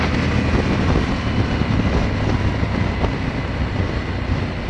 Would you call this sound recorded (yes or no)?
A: yes